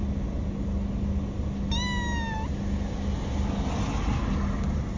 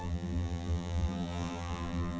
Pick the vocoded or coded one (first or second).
second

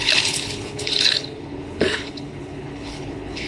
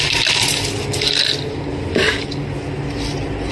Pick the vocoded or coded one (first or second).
first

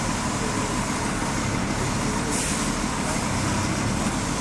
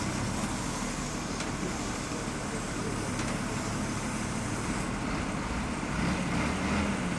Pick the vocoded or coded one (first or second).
first